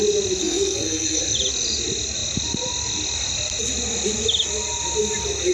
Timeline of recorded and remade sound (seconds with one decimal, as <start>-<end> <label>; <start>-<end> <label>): 0.0-0.4 recorded; 0.4-1.2 remade; 1.2-5.5 recorded